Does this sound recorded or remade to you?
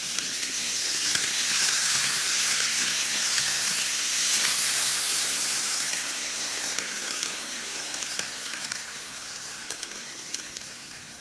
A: remade